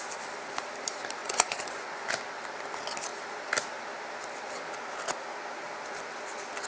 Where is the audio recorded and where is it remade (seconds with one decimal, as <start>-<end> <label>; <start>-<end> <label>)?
0.0-1.2 recorded; 1.2-2.1 remade; 2.1-6.7 recorded